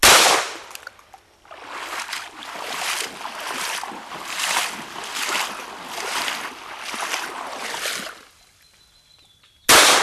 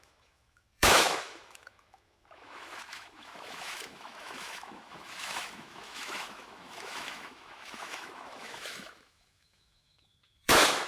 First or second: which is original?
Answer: first